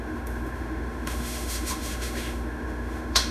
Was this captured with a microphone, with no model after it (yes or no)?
no